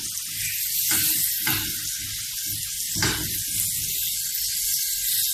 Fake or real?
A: real